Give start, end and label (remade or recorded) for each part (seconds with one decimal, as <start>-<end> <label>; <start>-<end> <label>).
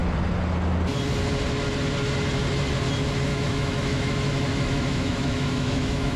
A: 0.0-3.3 recorded; 3.3-6.2 remade